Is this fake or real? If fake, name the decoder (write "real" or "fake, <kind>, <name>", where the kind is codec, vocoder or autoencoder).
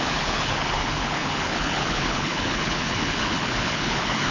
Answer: fake, codec, HILCodec